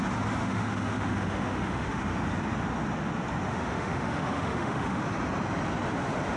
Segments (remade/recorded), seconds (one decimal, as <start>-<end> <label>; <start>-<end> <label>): 0.0-0.4 recorded; 0.4-2.0 remade; 2.0-3.5 recorded; 3.5-5.0 remade; 5.0-6.4 recorded